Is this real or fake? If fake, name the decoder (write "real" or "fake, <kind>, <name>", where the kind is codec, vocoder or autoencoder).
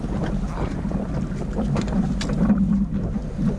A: real